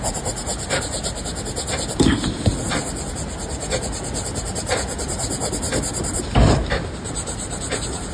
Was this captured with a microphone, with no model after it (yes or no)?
yes